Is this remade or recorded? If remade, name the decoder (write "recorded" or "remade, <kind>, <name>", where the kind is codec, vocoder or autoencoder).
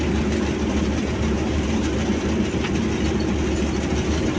recorded